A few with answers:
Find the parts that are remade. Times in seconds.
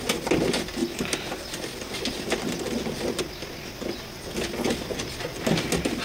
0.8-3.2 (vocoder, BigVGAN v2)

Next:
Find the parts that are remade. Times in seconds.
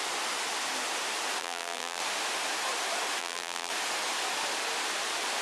1.4-2.0 (vocoder, BigVGAN v2); 3.2-3.7